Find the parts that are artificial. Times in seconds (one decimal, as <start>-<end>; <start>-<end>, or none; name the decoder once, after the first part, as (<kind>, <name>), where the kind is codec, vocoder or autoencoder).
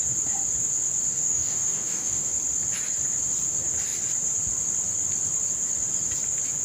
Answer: 1.1-2.3 (codec, DAC)